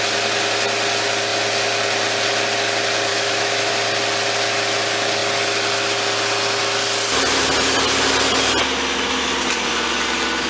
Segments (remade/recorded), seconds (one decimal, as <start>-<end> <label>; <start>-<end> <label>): 0.0-3.1 recorded; 3.1-3.7 remade; 3.7-10.5 recorded